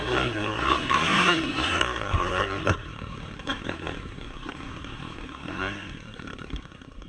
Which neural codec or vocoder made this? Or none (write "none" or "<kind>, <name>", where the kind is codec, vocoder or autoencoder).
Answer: codec, SNAC